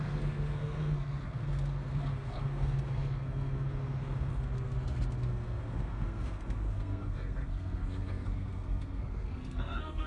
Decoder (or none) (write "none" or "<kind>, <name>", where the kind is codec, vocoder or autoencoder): codec, SNAC